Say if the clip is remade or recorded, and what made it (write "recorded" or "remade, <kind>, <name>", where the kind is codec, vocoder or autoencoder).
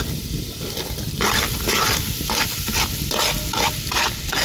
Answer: recorded